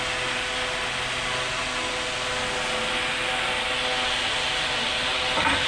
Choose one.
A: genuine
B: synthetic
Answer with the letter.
A